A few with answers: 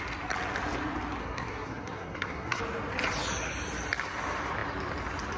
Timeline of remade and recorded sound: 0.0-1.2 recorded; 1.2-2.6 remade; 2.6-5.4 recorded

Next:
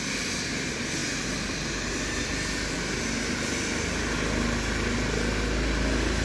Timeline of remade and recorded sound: 0.0-6.2 recorded

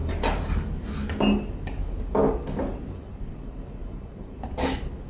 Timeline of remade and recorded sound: 0.0-0.5 remade; 0.5-3.8 recorded; 3.8-4.5 remade; 4.5-5.1 recorded

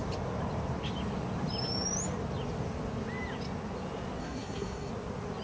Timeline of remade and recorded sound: 0.0-4.2 recorded; 4.2-4.9 remade; 4.9-5.4 recorded

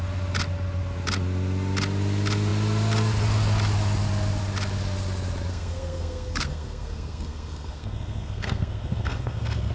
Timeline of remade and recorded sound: 0.0-5.5 recorded; 5.5-9.7 remade

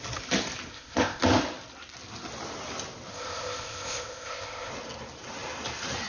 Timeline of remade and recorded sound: 0.0-0.7 recorded; 0.7-1.2 remade; 1.2-3.1 recorded; 3.1-4.7 remade; 4.7-6.1 recorded

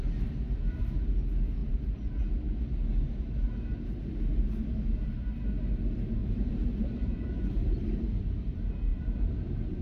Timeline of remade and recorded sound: 0.0-1.6 recorded; 1.6-2.1 remade; 2.1-6.2 recorded; 6.2-8.2 remade; 8.2-8.9 recorded; 8.9-9.8 remade